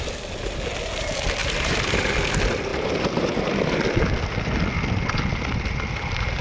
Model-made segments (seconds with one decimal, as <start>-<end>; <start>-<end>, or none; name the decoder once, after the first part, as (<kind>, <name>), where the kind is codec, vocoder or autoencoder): 1.4-2.1 (vocoder, BigVGAN v2); 2.7-3.8